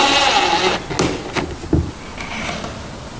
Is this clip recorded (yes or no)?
yes